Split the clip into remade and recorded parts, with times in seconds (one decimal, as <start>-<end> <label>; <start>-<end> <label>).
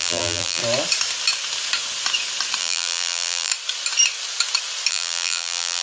0.0-0.6 remade; 0.6-2.6 recorded; 2.6-3.5 remade; 3.5-4.9 recorded; 4.9-5.8 remade